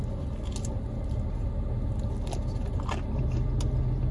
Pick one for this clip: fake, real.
real